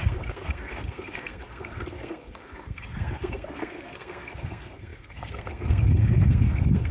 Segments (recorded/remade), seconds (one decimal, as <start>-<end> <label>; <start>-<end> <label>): 0.0-6.9 remade